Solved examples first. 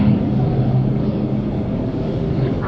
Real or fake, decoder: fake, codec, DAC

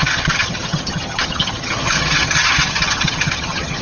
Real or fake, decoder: fake, vocoder, HiFi-GAN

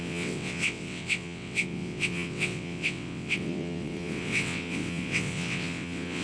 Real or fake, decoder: fake, vocoder, WaveNeXt